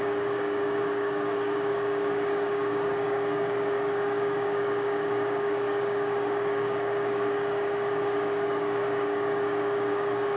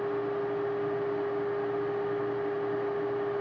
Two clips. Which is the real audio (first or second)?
second